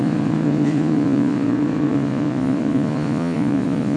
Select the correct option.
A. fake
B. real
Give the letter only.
A